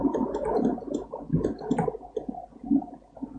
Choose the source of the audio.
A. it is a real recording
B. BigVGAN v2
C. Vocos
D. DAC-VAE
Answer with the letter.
A